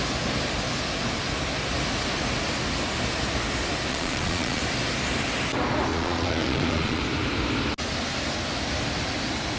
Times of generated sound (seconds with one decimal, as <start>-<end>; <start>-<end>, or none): 3.9-4.6; 5.9-7.0